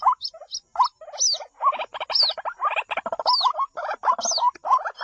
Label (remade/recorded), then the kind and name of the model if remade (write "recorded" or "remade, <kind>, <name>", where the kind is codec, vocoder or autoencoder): recorded